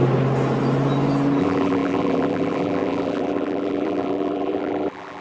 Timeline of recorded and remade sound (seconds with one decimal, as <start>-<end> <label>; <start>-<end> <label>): 0.0-1.4 recorded; 1.4-5.2 remade